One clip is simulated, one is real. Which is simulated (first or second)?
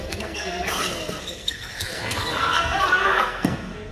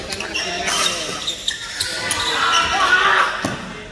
first